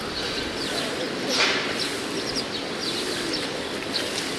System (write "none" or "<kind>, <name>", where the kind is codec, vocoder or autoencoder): none